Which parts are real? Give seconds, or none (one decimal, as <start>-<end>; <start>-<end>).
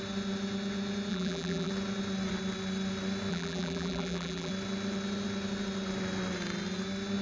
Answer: 0.0-1.1; 1.7-3.3; 4.5-7.2